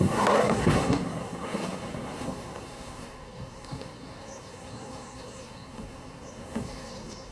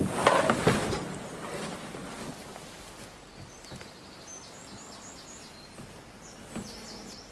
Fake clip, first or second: first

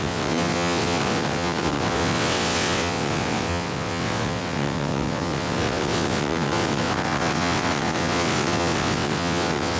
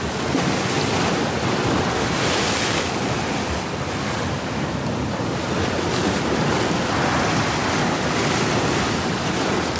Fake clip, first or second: first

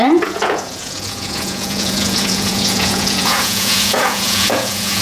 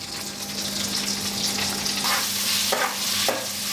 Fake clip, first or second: first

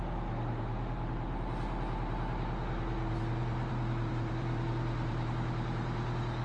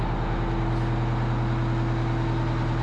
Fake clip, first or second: first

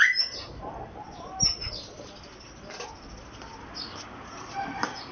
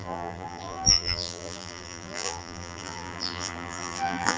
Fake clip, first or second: second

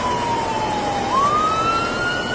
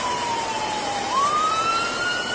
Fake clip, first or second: second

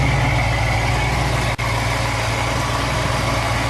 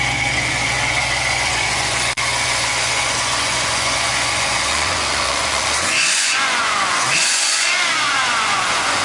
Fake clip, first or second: second